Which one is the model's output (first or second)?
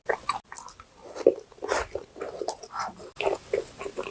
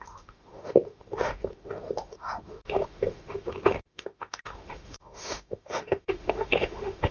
second